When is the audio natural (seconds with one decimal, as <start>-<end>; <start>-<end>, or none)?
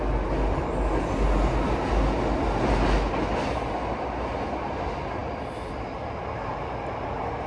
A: 0.0-7.5